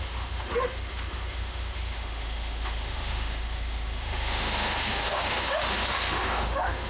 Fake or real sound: fake